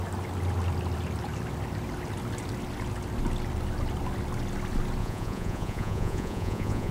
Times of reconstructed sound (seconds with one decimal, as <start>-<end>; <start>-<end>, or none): 5.0-6.9